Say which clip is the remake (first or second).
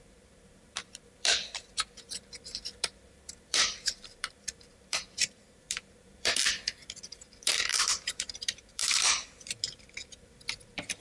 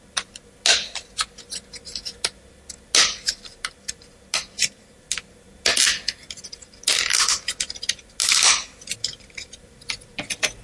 first